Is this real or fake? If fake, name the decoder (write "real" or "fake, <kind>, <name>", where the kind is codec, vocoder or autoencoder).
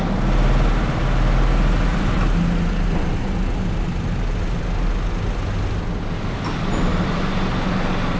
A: real